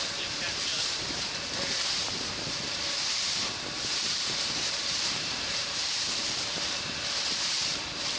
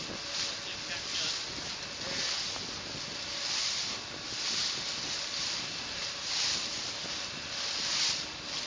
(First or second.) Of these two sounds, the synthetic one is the first